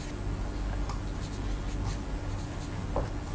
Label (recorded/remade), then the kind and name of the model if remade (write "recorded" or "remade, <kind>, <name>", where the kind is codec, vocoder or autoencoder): recorded